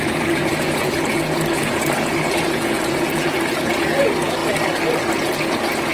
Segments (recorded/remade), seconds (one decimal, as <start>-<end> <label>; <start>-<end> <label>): 0.0-4.4 remade; 4.4-5.1 recorded; 5.1-5.9 remade